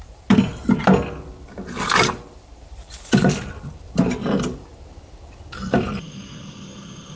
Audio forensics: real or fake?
real